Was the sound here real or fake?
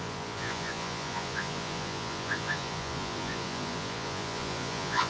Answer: fake